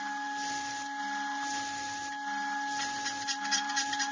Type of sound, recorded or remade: recorded